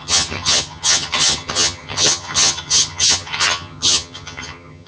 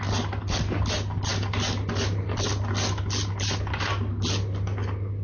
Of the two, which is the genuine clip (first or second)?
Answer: second